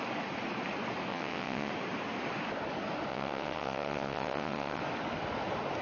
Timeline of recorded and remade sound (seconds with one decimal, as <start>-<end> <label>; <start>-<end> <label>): 0.0-1.1 recorded; 1.1-1.7 remade; 1.7-3.1 recorded; 3.1-4.8 remade; 4.8-5.8 recorded

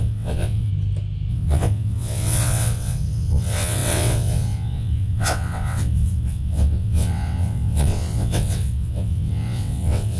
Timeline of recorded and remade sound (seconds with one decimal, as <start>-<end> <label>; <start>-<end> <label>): 0.0-0.7 remade; 0.7-1.3 recorded; 1.3-10.2 remade

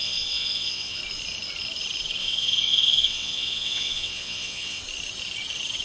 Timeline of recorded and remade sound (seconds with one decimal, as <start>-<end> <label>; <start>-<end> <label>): 0.0-1.0 remade; 1.0-2.2 recorded; 2.2-4.8 remade; 4.8-5.8 recorded

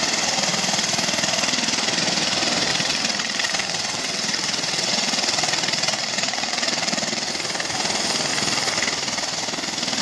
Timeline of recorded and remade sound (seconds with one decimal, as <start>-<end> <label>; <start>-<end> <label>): 0.0-2.7 recorded; 2.7-7.3 remade; 7.3-10.0 recorded

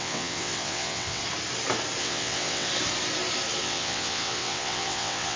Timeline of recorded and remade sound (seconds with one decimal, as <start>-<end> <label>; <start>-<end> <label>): 0.0-1.2 remade; 1.2-2.0 recorded; 2.0-2.7 remade; 2.7-3.6 recorded; 3.6-5.4 remade

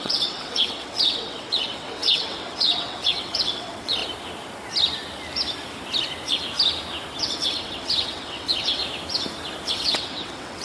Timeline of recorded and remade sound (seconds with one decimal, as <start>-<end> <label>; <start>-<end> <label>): 0.0-4.0 remade; 4.0-7.2 recorded; 7.2-8.8 remade; 8.8-9.7 recorded; 9.7-10.6 remade

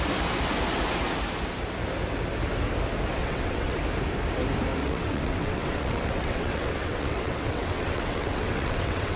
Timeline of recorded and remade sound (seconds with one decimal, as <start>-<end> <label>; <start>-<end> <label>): 0.0-3.1 recorded; 3.1-3.8 remade; 3.8-4.8 recorded; 4.8-9.2 remade